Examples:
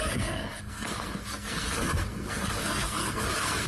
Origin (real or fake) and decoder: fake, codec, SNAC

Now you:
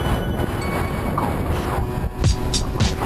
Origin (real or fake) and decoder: real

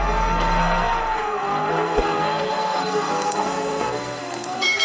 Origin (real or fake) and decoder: fake, codec, SNAC